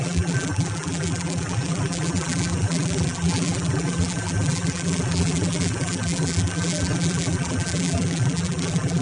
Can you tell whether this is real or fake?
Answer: fake